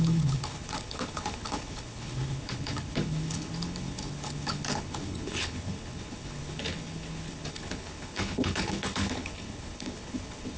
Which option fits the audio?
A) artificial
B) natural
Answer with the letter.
A